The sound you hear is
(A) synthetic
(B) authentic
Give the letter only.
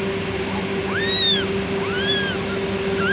B